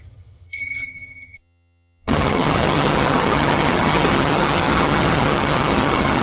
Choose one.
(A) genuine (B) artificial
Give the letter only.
B